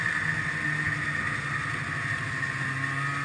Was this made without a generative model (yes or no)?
yes